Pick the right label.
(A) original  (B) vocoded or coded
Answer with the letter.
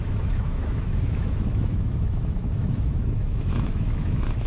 B